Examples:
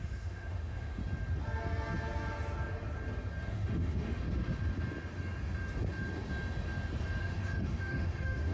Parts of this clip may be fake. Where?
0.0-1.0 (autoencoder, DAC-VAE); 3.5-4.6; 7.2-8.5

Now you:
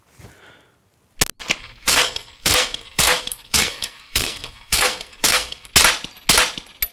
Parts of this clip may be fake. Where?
1.6-5.7 (codec, SNAC)

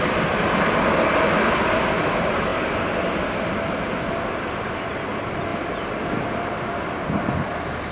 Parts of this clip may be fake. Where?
none

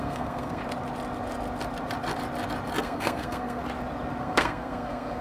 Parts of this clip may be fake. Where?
0.0-0.6 (codec, SNAC); 2.8-3.6; 4.2-5.2